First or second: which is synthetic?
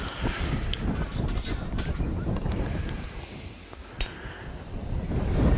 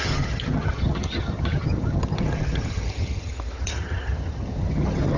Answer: second